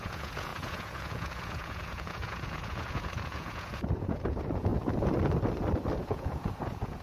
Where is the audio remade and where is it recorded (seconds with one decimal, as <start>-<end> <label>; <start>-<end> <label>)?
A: 0.0-4.7 remade; 4.7-6.0 recorded; 6.0-7.0 remade